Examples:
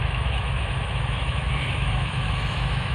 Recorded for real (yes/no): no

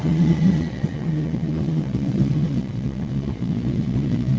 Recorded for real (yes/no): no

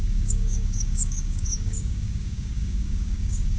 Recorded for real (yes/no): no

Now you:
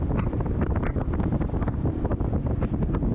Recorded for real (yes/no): yes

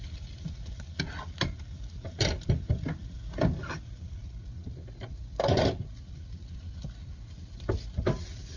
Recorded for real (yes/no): yes